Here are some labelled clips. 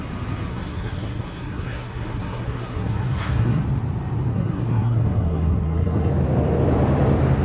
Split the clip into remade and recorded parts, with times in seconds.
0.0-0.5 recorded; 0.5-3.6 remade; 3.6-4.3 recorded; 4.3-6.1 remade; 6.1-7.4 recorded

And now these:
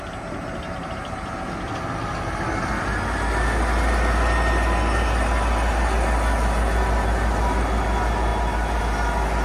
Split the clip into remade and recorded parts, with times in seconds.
0.0-9.4 recorded